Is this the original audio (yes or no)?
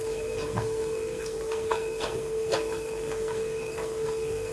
no